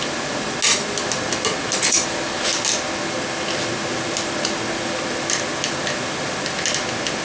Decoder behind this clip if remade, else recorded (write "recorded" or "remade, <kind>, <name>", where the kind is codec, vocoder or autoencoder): recorded